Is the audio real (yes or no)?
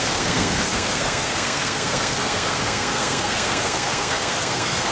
no